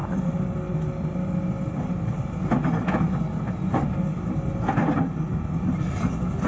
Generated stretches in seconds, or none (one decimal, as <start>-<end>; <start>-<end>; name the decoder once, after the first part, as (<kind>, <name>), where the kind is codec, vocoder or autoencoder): none